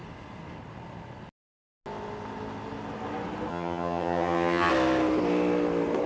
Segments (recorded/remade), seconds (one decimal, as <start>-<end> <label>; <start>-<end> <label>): 0.0-3.5 recorded; 3.5-4.7 remade; 4.7-6.1 recorded

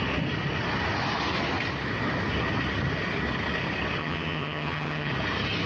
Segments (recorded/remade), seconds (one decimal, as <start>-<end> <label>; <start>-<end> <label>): 0.0-4.0 recorded; 4.0-5.1 remade; 5.1-5.7 recorded

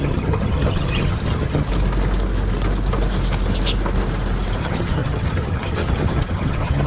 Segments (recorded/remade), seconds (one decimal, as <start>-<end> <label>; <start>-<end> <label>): 0.0-1.7 remade; 1.7-4.6 recorded; 4.6-6.9 remade

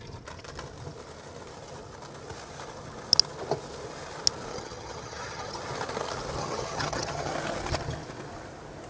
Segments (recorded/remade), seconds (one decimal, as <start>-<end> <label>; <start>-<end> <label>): 0.0-4.5 recorded; 4.5-5.6 remade; 5.6-6.4 recorded; 6.4-7.3 remade; 7.3-8.9 recorded

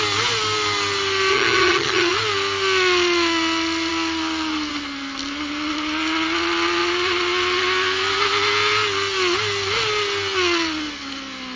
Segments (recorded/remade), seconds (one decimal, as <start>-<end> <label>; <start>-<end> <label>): 0.0-1.3 recorded; 1.3-2.1 remade; 2.1-11.6 recorded